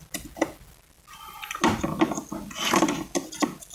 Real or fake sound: real